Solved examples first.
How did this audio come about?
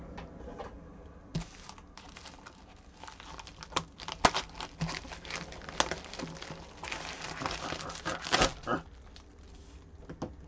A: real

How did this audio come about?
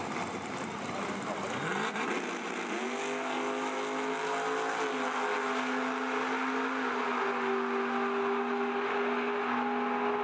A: real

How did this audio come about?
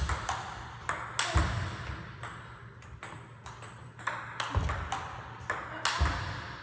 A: real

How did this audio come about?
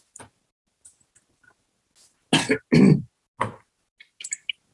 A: real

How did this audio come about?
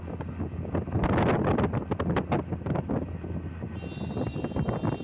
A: real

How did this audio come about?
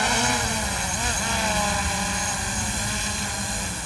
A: real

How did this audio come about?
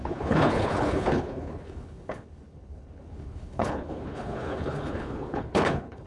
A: fake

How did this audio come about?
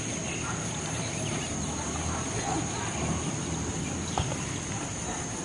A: real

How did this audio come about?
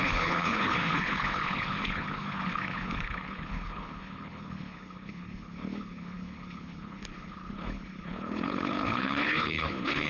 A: fake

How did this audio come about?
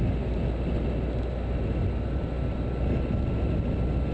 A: real